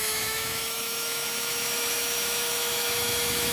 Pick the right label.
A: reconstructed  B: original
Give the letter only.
A